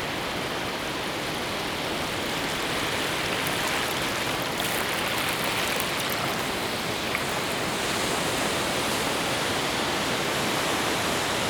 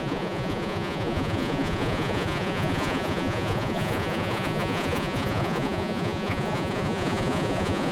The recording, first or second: first